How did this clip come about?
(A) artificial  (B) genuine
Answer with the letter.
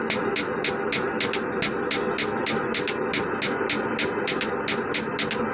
B